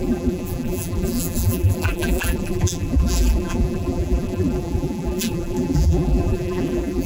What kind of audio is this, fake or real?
fake